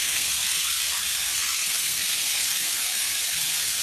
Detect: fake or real fake